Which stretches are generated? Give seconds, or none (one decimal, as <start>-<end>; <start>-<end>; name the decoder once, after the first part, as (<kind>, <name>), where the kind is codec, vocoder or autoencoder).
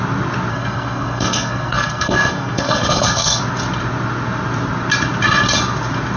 0.5-3.4 (codec, SNAC)